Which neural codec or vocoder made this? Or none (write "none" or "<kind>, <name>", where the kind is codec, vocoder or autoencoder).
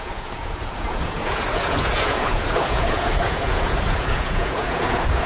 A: vocoder, Vocos